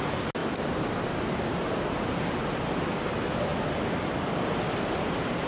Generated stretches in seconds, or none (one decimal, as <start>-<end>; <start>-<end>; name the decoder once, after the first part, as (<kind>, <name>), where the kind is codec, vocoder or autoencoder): none